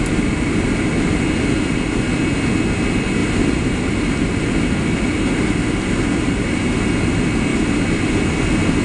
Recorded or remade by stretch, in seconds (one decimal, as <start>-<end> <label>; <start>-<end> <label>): 0.0-3.2 recorded; 3.2-4.5 remade; 4.5-8.8 recorded